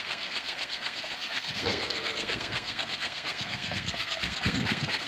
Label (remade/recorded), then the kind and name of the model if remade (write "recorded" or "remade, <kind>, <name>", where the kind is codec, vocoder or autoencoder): remade, codec, SNAC